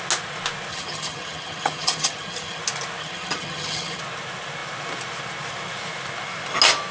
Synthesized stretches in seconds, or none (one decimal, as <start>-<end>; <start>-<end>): 0.7-2.6; 3.0-4.0